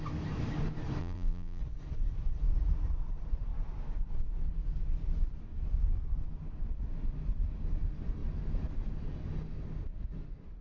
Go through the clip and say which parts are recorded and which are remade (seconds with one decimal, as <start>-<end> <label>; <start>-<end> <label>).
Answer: 0.0-1.0 recorded; 1.0-1.6 remade; 1.6-10.6 recorded